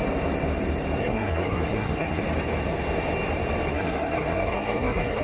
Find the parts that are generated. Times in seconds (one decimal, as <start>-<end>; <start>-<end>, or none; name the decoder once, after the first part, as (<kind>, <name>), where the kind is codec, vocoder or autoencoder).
1.0-2.2 (codec, SNAC); 3.7-5.2